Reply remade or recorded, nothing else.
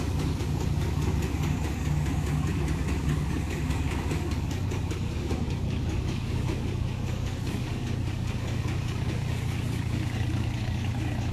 remade